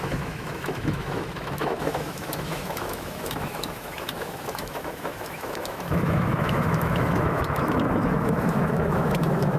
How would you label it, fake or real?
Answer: fake